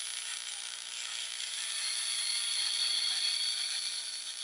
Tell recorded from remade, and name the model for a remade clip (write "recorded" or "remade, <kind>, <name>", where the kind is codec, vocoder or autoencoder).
recorded